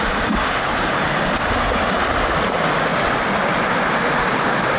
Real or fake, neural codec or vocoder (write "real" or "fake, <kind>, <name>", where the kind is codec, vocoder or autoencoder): real